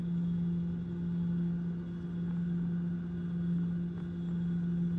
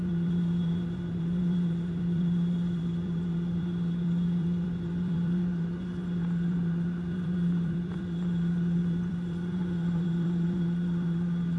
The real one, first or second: first